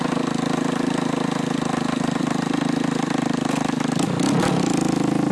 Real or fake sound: real